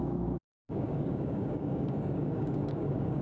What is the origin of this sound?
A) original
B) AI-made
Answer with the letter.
B